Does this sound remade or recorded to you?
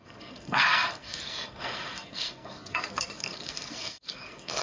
remade